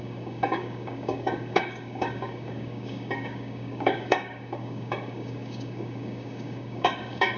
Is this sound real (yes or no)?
no